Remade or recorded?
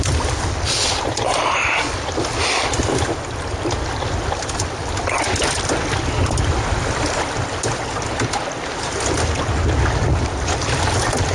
recorded